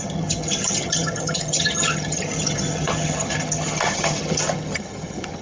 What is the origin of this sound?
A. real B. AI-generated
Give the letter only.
B